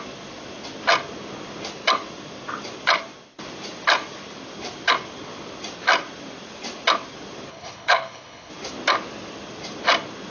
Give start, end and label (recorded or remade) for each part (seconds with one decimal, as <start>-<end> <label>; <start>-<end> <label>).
0.0-7.5 recorded; 7.5-8.5 remade; 8.5-10.3 recorded